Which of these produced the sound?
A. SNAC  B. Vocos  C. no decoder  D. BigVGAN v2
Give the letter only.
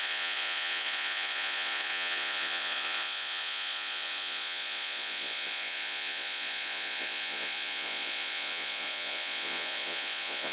B